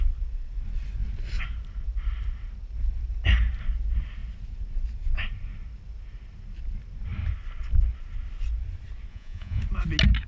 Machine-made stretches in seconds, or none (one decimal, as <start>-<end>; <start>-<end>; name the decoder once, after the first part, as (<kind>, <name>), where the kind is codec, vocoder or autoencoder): 9.1-9.6 (vocoder, Vocos)